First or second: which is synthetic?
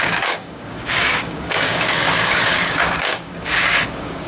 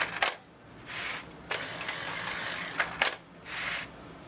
first